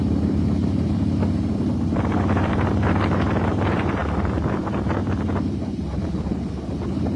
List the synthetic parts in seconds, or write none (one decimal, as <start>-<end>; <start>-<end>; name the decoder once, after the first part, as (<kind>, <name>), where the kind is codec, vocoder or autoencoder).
0.0-7.2 (vocoder, BigVGAN v2)